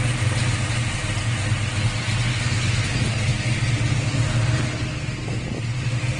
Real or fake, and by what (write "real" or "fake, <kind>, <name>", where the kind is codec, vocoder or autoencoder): real